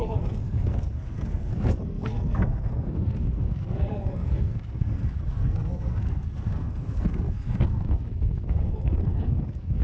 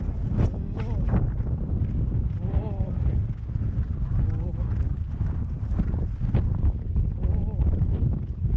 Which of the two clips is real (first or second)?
second